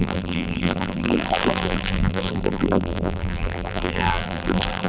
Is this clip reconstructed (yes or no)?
yes